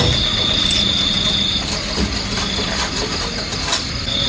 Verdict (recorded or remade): recorded